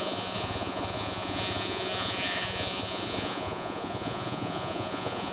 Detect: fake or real fake